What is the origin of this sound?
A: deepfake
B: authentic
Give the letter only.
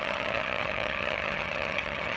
A